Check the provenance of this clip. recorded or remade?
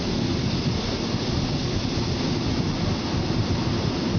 recorded